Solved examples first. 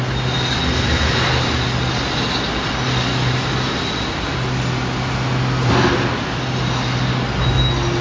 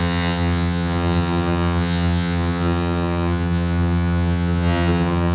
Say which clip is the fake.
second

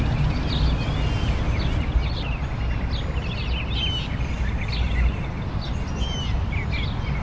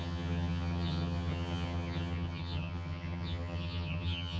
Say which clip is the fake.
second